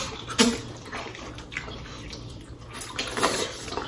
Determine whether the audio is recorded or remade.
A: recorded